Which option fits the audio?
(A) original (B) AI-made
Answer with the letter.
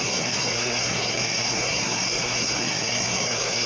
B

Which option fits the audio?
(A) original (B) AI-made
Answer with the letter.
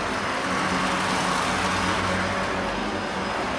A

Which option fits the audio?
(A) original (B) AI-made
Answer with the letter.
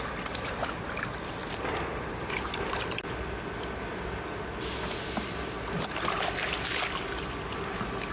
A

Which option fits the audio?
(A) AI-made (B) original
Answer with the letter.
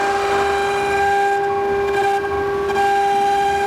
B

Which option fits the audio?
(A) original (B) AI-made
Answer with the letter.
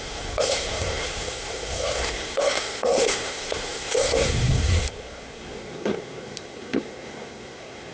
B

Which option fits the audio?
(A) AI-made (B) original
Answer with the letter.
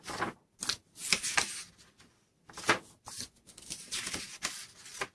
B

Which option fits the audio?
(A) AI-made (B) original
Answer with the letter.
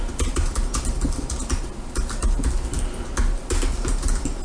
B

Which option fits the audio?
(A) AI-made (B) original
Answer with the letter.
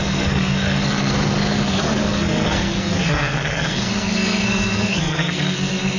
A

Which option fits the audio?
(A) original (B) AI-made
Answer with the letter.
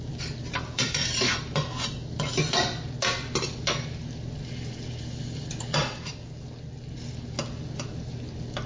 A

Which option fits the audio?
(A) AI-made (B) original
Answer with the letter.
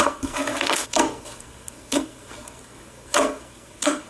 A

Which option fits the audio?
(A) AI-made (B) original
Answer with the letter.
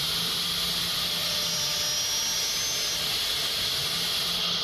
B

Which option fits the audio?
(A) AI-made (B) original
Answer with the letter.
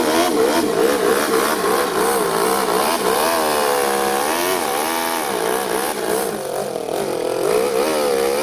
B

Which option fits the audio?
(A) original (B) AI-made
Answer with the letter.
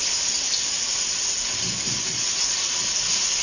A